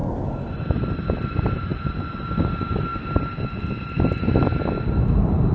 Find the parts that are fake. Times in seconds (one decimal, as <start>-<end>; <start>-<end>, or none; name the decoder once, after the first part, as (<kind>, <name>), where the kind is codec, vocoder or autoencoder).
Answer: none